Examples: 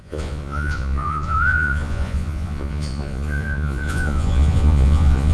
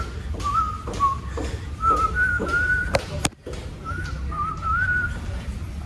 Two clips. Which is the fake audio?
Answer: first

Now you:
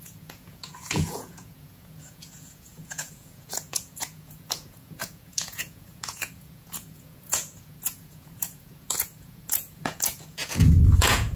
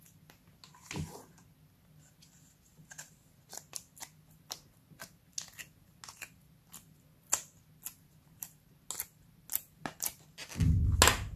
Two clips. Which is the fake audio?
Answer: first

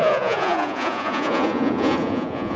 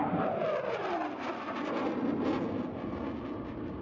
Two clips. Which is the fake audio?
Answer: first